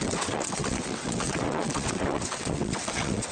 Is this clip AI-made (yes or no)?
yes